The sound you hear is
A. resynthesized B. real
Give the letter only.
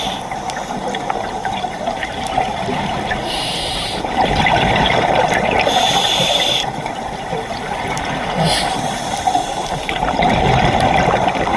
A